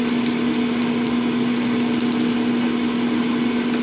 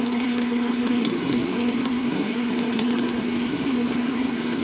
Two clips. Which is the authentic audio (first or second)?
first